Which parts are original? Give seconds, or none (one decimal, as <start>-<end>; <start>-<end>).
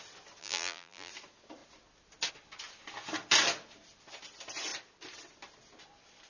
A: 0.0-0.4; 1.1-6.3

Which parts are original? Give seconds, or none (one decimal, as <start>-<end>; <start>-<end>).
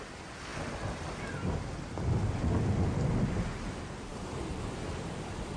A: 0.0-5.6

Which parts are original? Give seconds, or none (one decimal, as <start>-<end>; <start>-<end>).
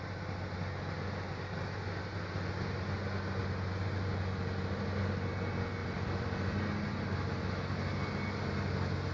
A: 0.0-5.8; 6.6-9.1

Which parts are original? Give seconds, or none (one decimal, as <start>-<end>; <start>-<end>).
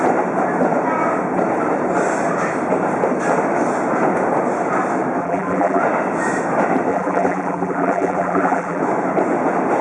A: 0.0-5.2; 5.8-6.9; 8.8-9.8